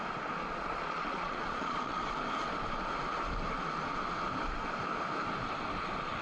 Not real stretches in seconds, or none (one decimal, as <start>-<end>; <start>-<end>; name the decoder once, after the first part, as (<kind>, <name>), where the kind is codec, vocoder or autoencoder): 0.4-2.1 (vocoder, Vocos)